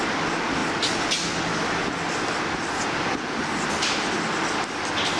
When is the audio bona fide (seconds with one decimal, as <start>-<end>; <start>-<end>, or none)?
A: 0.0-5.2